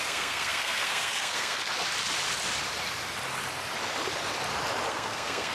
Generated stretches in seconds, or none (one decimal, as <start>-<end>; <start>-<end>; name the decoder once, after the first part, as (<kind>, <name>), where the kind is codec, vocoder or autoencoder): 0.0-1.6 (codec, SNAC); 4.9-5.5